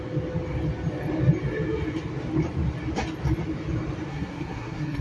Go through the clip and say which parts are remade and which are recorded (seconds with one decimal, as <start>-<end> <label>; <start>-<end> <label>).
0.0-4.1 recorded; 4.1-5.0 remade